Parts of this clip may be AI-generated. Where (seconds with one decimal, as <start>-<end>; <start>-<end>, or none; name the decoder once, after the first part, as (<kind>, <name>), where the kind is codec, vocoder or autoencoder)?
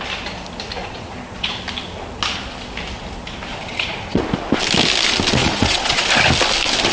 0.8-1.6 (vocoder, Vocos); 3.5-4.2; 5.4-6.1